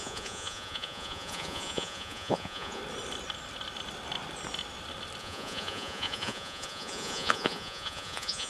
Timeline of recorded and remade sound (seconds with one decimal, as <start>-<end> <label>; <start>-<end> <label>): 0.0-2.8 remade; 2.8-5.2 recorded; 5.2-8.5 remade